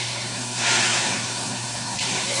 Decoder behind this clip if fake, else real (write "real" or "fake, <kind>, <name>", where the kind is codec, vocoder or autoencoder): fake, codec, SNAC